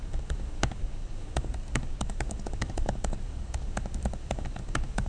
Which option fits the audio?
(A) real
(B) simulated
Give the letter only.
B